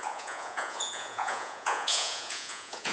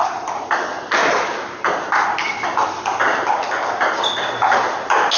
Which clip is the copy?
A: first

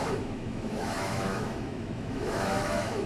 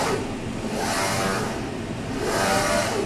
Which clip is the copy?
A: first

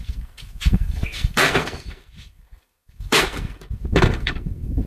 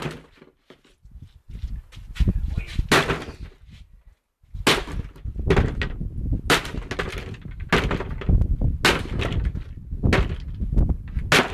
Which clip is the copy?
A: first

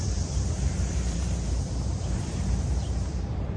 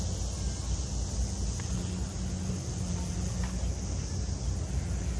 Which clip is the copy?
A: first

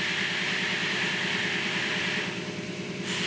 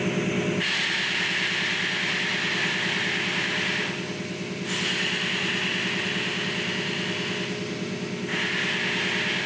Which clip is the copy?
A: first